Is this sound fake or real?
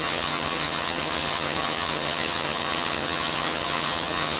fake